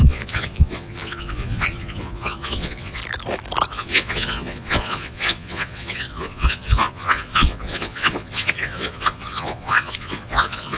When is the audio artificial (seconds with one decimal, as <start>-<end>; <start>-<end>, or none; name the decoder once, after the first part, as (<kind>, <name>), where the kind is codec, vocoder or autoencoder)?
0.0-3.0 (vocoder, Vocos); 3.7-10.8